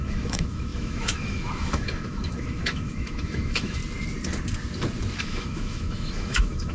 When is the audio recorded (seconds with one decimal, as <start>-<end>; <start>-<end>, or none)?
3.8-5.2